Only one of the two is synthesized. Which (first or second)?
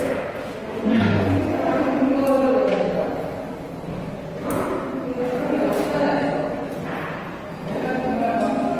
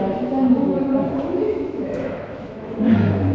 second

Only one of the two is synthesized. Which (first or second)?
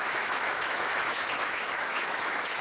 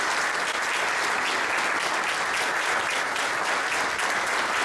first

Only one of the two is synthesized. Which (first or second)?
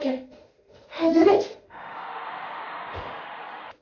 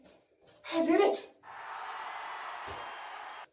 first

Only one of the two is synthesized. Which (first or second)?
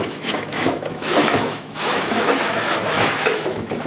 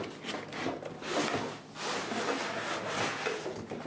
first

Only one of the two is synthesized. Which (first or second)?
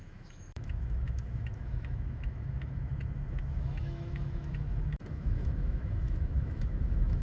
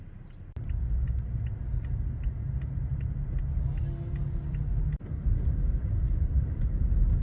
first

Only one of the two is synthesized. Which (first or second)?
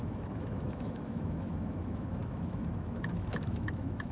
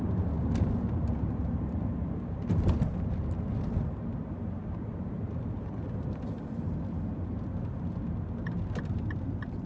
first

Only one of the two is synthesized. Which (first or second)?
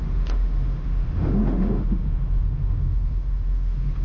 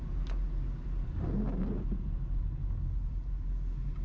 first